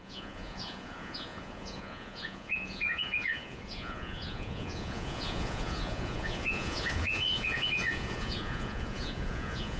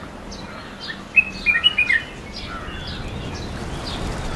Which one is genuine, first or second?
second